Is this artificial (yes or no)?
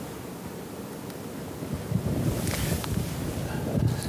no